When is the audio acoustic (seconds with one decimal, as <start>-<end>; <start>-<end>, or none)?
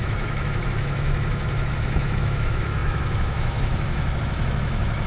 none